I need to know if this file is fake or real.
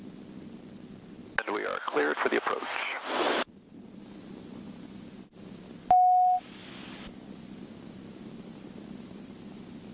real